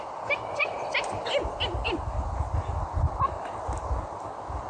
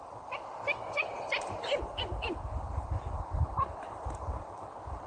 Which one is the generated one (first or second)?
second